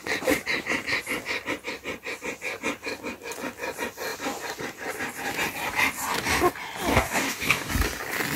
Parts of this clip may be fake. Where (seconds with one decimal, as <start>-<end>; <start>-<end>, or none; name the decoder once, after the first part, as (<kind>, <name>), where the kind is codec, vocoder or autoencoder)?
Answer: 6.9-7.7 (codec, DAC)